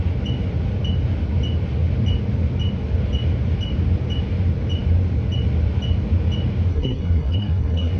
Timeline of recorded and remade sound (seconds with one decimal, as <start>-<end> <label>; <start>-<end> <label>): 0.0-6.7 recorded; 6.7-8.0 remade